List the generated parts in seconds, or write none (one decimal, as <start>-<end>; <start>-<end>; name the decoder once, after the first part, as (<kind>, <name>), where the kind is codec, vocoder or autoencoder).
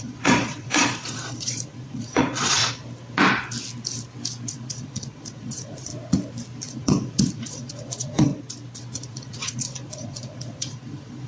0.0-2.6 (vocoder, Vocos); 4.5-5.9; 6.6-8.3; 8.8-11.3